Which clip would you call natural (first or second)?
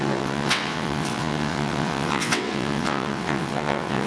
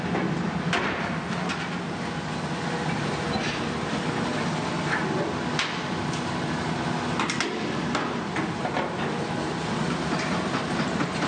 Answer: second